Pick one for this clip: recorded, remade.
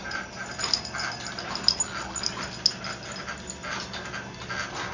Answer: recorded